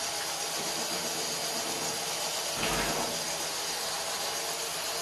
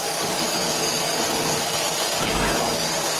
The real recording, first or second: first